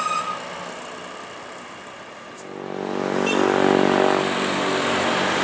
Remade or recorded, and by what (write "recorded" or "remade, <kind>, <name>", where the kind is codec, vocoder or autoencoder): recorded